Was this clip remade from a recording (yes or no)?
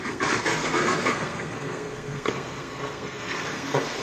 yes